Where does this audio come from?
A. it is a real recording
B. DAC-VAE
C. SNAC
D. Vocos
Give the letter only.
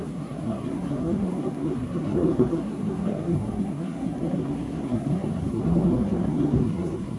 C